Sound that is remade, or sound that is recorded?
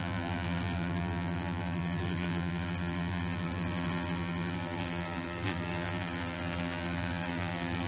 remade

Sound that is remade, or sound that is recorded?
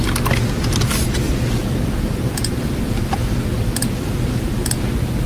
recorded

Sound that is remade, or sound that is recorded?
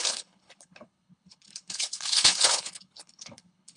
remade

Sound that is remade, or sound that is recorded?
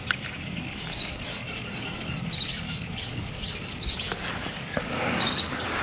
remade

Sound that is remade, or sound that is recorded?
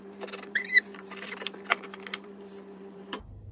remade